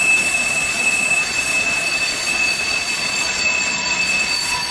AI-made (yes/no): yes